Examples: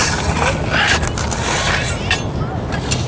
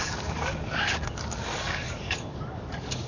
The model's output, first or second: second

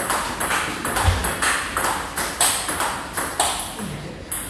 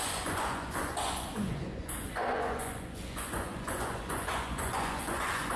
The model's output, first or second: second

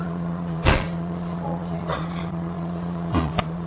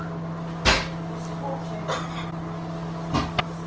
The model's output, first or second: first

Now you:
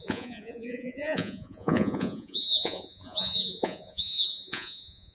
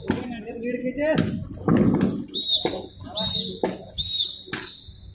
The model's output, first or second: first